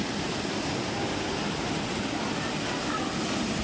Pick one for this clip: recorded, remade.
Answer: recorded